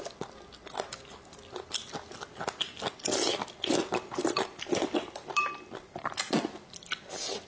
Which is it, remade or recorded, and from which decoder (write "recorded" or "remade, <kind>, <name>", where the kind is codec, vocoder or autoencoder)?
recorded